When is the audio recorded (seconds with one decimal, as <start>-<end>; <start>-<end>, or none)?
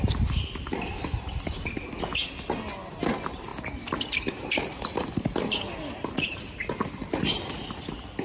0.0-8.2